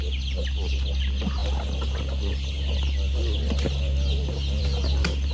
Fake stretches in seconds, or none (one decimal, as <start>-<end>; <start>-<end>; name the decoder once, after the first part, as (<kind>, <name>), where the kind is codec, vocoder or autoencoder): none